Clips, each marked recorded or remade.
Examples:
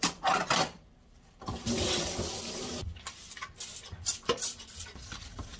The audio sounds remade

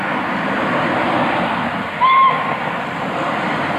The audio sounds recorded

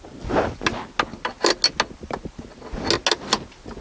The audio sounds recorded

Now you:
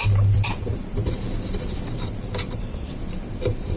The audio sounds remade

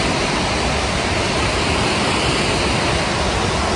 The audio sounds recorded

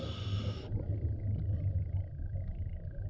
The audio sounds recorded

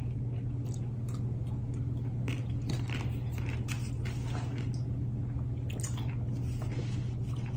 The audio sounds recorded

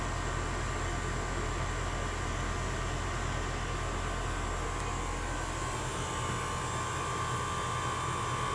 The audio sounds recorded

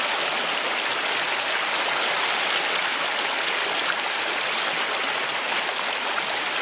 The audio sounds recorded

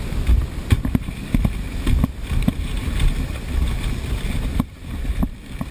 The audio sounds recorded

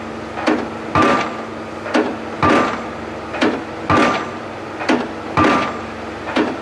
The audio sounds recorded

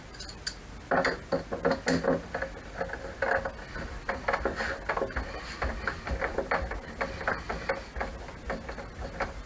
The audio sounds recorded